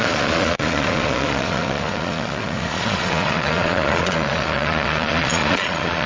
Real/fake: fake